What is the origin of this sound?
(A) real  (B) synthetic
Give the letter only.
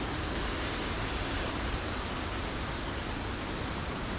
B